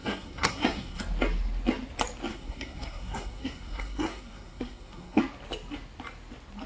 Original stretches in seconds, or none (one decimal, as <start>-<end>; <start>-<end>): 1.0-2.3; 5.2-6.7